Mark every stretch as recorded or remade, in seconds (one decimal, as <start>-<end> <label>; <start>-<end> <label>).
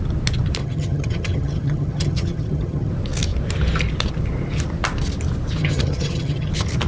0.0-0.6 recorded; 0.6-2.9 remade; 2.9-5.6 recorded; 5.6-6.5 remade; 6.5-6.9 recorded